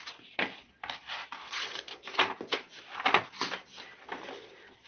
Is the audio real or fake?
real